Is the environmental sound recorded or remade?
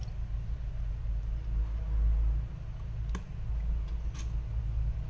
recorded